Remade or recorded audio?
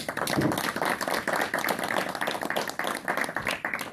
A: recorded